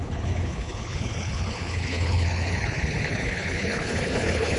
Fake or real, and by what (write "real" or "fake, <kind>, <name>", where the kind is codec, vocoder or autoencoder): fake, codec, HILCodec